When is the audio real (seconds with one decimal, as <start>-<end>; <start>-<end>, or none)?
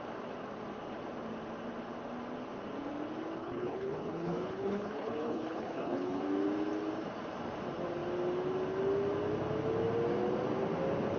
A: 0.0-3.4; 6.2-11.2